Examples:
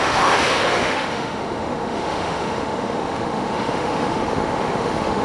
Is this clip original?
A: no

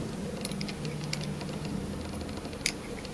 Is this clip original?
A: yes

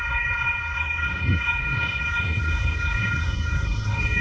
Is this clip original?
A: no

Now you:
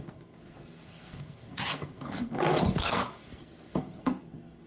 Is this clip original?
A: no